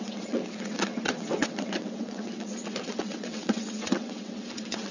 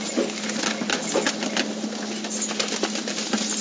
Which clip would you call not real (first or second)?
first